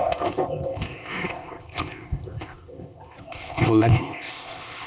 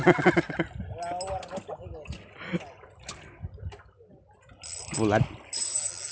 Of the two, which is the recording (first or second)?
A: second